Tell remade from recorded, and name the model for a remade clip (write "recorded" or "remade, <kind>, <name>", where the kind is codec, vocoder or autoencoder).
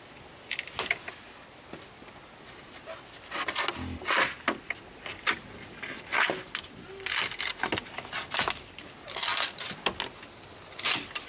recorded